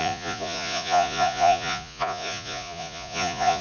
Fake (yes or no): yes